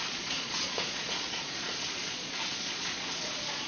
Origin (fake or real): fake